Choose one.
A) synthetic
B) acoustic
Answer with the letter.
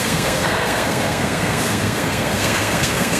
A